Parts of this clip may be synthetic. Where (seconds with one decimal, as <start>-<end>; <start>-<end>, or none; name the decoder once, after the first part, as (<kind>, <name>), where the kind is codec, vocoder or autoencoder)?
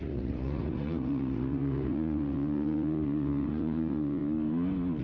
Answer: 0.0-4.2 (vocoder, Vocos)